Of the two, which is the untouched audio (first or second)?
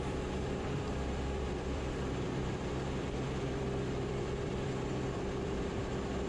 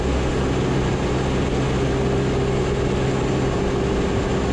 second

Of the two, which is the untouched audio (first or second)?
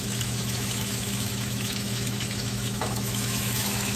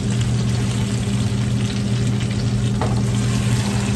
second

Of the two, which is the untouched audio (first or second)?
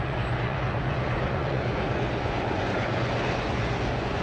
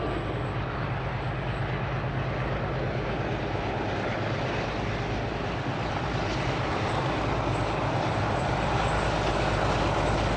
second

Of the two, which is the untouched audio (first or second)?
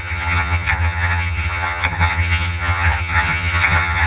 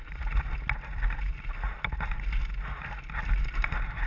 second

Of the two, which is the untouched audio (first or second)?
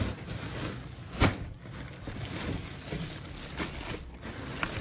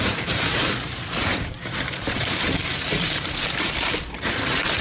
first